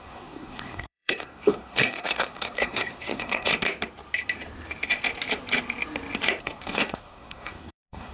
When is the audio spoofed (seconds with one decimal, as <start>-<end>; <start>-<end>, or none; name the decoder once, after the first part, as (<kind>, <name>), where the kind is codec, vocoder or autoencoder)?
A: 0.0-3.5 (codec, SNAC); 6.4-8.1